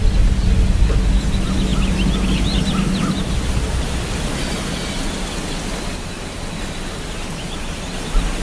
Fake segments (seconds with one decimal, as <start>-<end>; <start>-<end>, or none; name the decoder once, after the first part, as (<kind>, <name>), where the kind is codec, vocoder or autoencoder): none